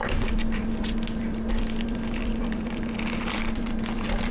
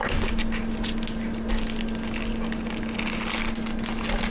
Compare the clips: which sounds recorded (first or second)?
second